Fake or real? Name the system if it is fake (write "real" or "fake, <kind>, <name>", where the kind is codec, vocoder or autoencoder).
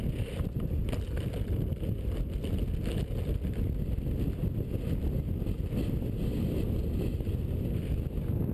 real